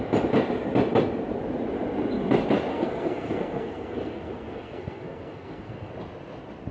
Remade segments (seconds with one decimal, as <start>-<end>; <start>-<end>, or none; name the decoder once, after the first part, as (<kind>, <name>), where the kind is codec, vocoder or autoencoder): 2.7-5.9 (codec, SNAC)